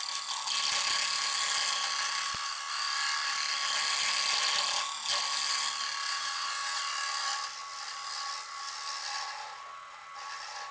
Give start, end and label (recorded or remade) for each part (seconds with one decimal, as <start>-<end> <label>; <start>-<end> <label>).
0.0-6.1 recorded; 6.1-6.8 remade; 6.8-10.7 recorded